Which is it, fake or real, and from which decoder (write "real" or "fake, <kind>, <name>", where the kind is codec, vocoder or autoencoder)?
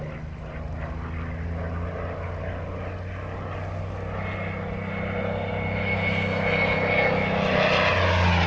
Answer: real